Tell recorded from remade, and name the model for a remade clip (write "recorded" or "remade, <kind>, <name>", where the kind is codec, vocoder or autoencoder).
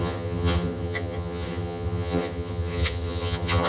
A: remade, vocoder, HiFi-GAN